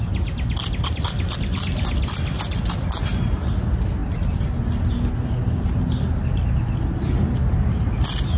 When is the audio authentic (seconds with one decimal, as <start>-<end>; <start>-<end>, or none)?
0.0-8.4